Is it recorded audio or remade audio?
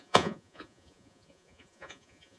remade